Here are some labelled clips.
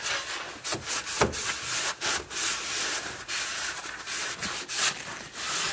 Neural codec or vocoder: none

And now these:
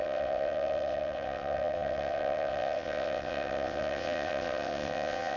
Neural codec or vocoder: vocoder, WaveNeXt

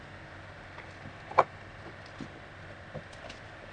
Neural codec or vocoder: none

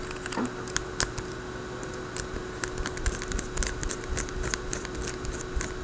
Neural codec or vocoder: none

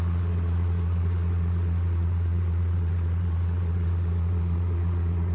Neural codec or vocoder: vocoder, WaveNeXt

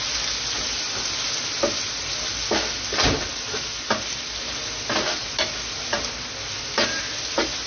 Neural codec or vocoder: none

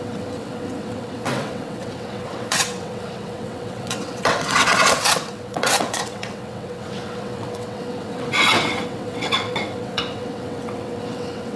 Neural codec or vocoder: vocoder, WaveNeXt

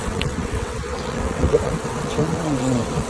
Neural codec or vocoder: vocoder, WaveNeXt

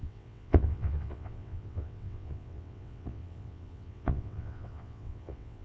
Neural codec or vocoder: vocoder, WaveNeXt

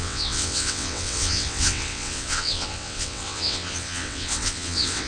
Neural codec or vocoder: vocoder, WaveNeXt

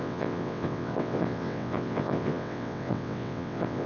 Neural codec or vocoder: vocoder, WaveNeXt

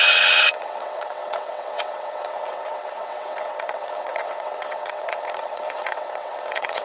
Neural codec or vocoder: vocoder, WaveNeXt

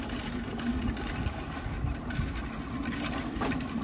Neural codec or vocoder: none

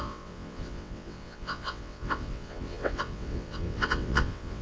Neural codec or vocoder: vocoder, WaveNeXt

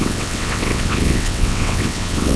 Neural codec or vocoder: vocoder, WaveNeXt